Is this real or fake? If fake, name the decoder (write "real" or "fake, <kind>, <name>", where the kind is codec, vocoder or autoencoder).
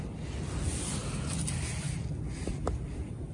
real